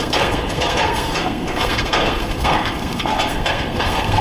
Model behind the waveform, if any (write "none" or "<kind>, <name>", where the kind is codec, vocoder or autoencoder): codec, SNAC